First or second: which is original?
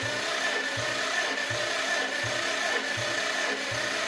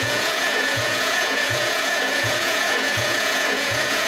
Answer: first